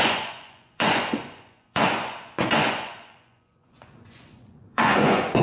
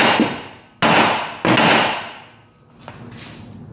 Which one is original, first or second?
second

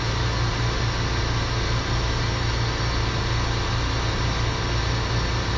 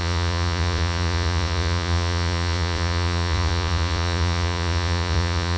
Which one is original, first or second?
first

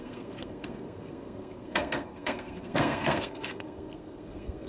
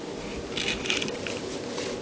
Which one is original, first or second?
second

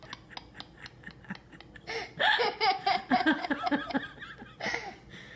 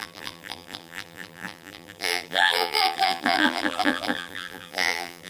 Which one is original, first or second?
first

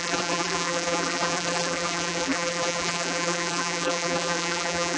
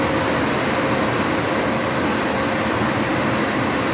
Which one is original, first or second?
second